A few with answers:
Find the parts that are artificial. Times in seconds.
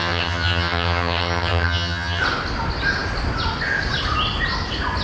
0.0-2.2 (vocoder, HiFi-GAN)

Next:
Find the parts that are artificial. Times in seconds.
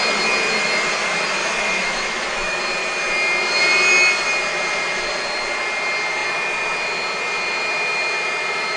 1.4-2.6 (autoencoder, DAC-VAE)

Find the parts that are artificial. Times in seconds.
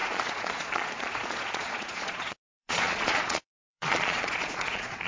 0.0-5.1 (vocoder, Vocos)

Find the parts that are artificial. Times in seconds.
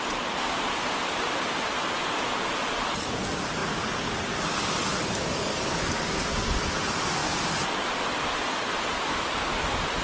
none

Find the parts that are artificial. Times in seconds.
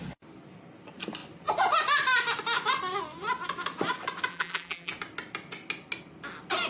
4.3-4.9 (vocoder, BigVGAN v2)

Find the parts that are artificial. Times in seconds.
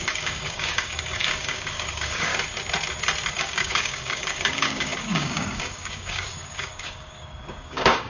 0.0-2.3 (codec, DAC); 3.3-8.1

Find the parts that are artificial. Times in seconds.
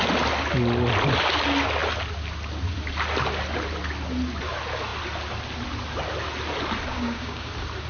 6.9-7.5 (codec, DAC)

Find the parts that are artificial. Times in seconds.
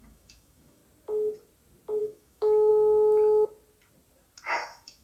0.0-0.8 (autoencoder, DAC-VAE); 2.0-2.7; 4.4-5.0